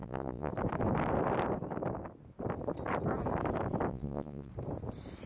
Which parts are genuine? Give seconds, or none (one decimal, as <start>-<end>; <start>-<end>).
0.5-3.9; 4.5-5.3